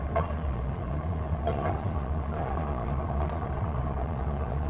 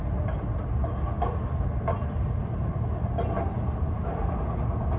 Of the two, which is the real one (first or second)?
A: second